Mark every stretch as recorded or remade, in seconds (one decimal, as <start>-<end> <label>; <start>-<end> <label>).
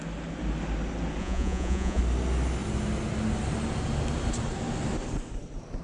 0.0-1.2 recorded; 1.2-2.0 remade; 2.0-5.8 recorded